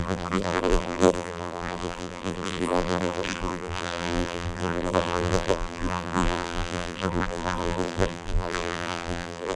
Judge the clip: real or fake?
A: fake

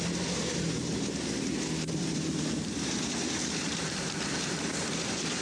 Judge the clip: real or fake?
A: fake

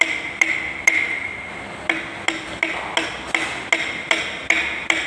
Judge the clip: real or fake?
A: real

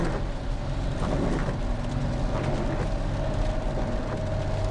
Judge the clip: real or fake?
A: real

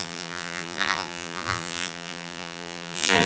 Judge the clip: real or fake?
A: fake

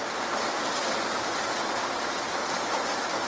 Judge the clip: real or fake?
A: real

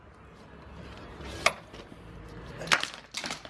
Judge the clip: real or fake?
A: real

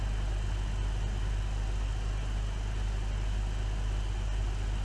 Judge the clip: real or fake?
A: real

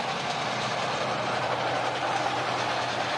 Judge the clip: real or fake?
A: real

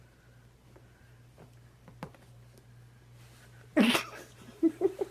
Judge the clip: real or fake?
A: real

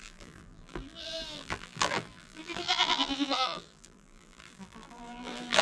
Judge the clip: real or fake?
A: fake